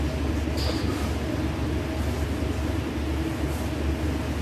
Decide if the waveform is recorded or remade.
recorded